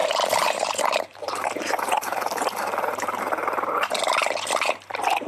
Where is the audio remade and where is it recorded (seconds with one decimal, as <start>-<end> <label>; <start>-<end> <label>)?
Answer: 0.0-5.3 remade